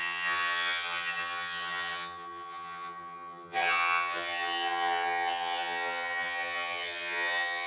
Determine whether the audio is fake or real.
fake